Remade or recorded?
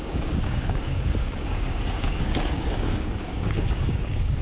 remade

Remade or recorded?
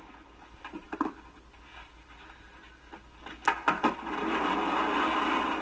recorded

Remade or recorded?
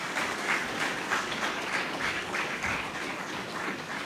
remade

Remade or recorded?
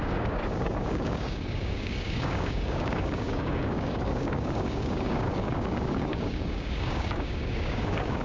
remade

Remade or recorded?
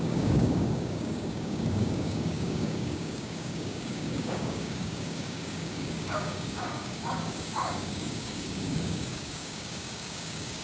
remade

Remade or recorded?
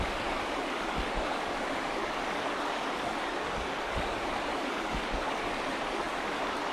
remade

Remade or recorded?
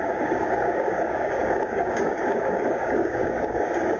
remade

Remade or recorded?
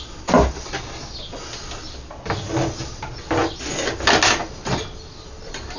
recorded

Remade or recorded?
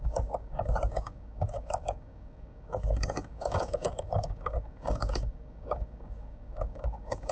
remade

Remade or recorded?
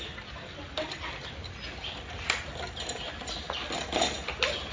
recorded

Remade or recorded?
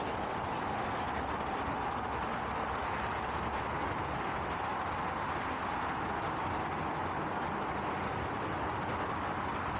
recorded